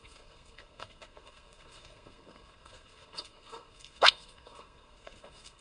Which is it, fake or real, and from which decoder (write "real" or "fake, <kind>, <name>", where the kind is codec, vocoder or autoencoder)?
fake, codec, SNAC